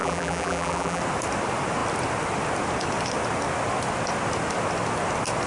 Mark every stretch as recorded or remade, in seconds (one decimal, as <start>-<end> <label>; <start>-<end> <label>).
0.0-1.0 remade; 1.0-5.5 recorded